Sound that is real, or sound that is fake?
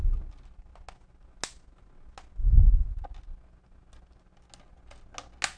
real